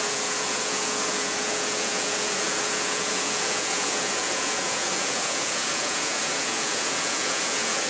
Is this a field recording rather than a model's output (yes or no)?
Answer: no